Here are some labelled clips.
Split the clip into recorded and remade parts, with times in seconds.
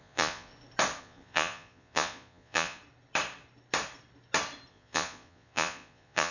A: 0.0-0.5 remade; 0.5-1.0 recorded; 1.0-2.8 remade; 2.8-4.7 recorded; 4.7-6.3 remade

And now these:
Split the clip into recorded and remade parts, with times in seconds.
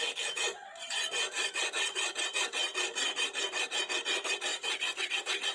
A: 0.0-0.6 recorded; 0.6-1.7 remade; 1.7-5.5 recorded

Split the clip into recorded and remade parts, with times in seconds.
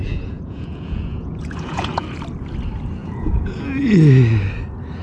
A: 0.0-2.2 remade; 2.2-3.0 recorded; 3.0-3.6 remade; 3.6-5.0 recorded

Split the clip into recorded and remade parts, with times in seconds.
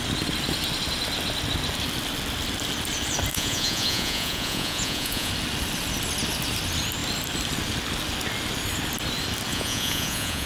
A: 0.0-3.3 recorded; 3.3-5.3 remade; 5.3-9.5 recorded; 9.5-10.5 remade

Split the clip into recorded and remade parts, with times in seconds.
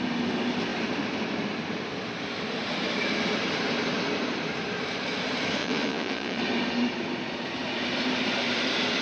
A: 0.0-5.6 recorded; 5.6-6.4 remade; 6.4-9.0 recorded